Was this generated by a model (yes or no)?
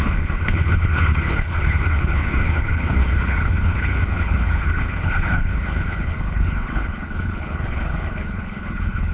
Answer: yes